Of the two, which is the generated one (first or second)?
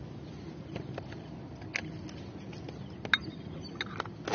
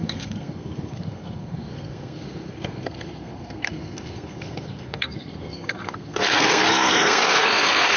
second